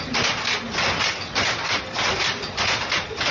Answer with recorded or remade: recorded